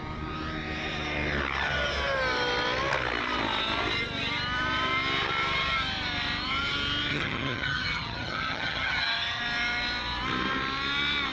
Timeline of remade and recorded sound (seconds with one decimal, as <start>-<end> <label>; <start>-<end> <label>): 0.0-7.1 recorded; 7.1-9.4 remade; 9.4-11.3 recorded